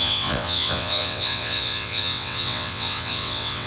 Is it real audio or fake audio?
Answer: fake